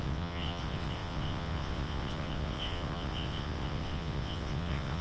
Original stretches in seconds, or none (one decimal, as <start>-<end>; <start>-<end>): none